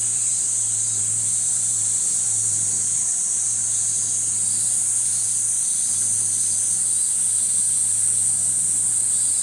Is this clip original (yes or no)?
yes